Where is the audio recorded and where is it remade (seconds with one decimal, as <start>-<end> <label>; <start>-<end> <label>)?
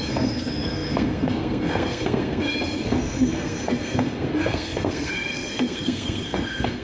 0.0-6.8 remade